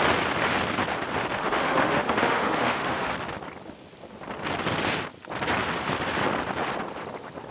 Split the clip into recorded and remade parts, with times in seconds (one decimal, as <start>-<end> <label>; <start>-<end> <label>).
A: 0.0-1.2 recorded; 1.2-3.1 remade; 3.1-7.5 recorded